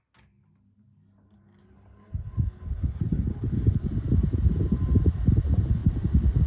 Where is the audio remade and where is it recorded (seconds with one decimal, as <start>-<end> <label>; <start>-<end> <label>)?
0.0-1.6 recorded; 1.6-3.9 remade; 3.9-6.5 recorded